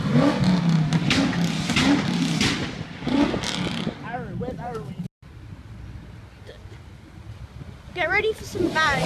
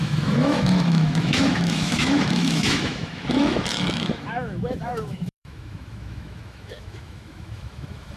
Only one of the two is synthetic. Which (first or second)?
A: second